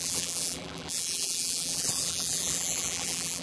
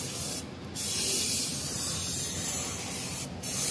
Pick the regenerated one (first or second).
first